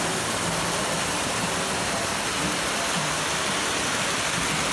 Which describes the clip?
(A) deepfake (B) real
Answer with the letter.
B